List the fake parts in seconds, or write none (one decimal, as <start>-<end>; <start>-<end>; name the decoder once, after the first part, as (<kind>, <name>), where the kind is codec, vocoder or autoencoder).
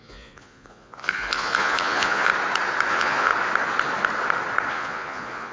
0.0-2.3 (vocoder, Vocos); 2.9-3.3; 4.7-5.5